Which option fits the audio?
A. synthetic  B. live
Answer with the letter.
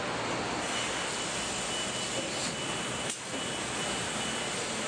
B